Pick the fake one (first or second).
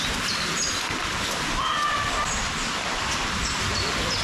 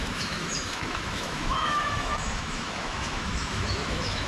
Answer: second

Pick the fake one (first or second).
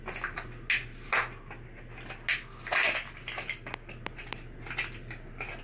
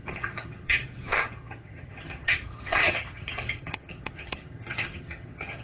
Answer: second